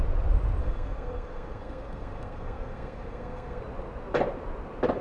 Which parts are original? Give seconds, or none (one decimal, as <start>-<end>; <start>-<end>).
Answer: 0.0-0.6; 3.6-5.0

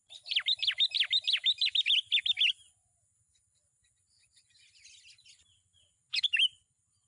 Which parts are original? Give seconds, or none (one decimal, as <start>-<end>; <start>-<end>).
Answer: 0.0-7.1

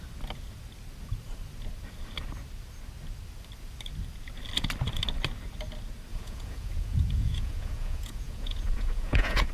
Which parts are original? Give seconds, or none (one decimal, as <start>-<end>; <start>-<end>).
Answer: 0.0-6.1

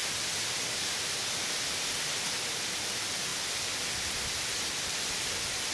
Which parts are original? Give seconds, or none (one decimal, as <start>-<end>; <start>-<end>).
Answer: 1.0-5.7

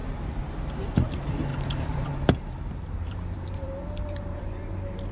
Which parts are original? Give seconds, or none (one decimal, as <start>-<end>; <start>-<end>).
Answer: 0.7-1.5; 4.4-5.1

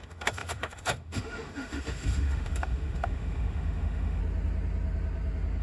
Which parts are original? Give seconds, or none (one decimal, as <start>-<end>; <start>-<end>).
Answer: 4.2-5.6

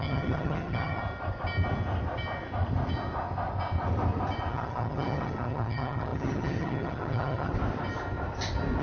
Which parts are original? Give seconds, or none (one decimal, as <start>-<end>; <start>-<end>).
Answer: 1.0-4.5; 7.5-8.8